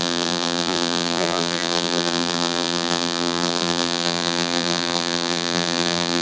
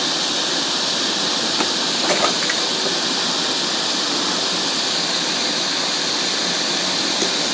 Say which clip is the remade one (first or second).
first